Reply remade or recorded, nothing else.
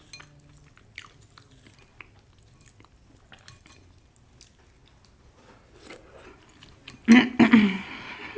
recorded